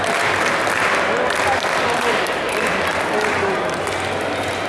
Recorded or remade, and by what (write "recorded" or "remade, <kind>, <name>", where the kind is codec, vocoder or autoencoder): recorded